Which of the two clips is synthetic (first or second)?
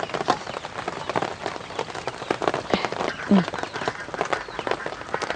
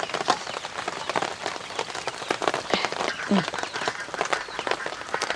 second